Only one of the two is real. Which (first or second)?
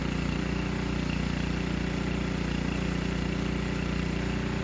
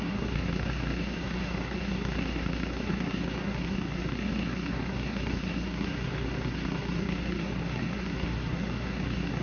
first